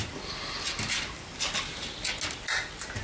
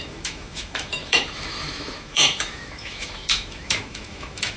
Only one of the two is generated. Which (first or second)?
second